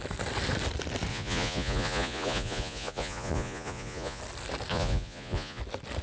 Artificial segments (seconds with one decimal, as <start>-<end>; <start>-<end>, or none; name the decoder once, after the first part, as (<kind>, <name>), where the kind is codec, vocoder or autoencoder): 1.1-4.2 (vocoder, Vocos); 4.7-5.6